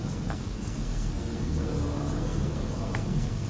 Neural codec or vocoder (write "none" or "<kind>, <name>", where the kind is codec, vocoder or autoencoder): codec, SNAC